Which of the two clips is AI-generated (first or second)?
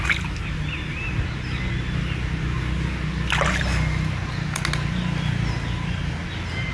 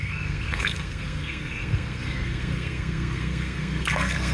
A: second